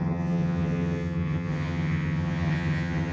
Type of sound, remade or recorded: remade